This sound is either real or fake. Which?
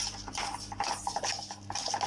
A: real